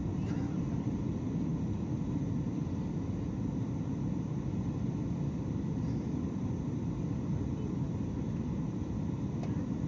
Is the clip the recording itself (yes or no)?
yes